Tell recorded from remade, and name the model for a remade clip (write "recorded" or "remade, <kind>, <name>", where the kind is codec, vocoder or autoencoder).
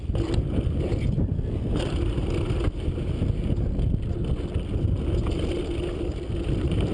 recorded